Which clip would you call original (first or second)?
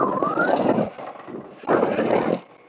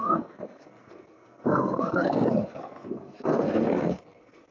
first